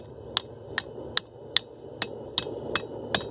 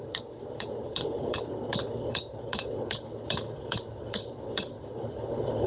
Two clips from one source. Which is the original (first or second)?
first